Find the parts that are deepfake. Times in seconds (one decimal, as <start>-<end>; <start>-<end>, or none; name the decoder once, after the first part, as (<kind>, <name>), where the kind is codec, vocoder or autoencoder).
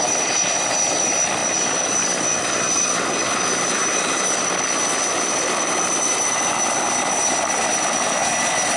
3.8-4.5 (vocoder, BigVGAN v2)